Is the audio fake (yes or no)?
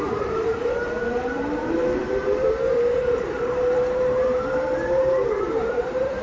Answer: yes